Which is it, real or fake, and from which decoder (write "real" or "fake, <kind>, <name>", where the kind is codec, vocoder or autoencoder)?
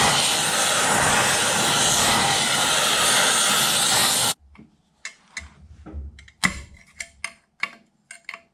real